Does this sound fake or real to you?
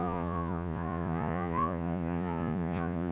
fake